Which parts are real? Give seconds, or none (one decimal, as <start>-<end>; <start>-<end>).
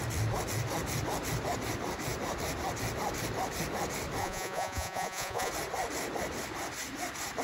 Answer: 0.0-4.2; 5.5-7.4